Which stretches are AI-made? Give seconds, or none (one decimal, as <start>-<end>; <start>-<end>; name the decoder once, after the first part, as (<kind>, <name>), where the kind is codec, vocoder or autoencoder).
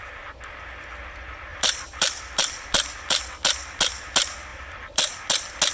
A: 1.5-3.2 (vocoder, BigVGAN v2); 4.5-5.2